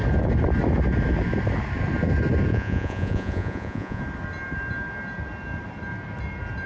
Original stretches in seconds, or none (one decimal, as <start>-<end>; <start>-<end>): 0.0-2.5; 4.0-6.7